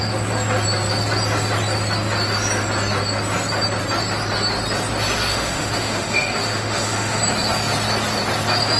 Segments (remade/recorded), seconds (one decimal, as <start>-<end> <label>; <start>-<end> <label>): 0.0-5.3 recorded; 5.3-7.2 remade; 7.2-8.8 recorded